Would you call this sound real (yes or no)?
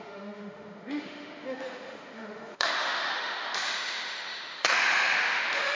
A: no